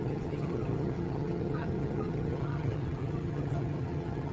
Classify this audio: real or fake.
fake